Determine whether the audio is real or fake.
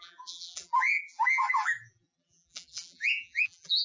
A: fake